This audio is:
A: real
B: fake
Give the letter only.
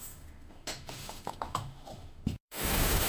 B